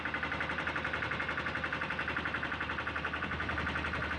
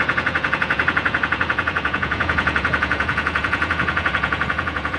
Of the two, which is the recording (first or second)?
first